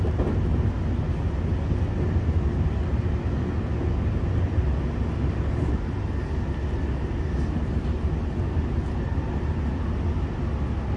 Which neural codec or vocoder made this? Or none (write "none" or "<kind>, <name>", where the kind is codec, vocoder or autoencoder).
none